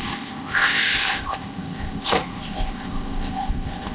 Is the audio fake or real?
fake